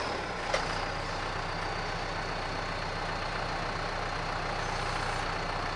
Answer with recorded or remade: recorded